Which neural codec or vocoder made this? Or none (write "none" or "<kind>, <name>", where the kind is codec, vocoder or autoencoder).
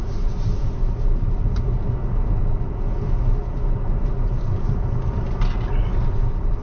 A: none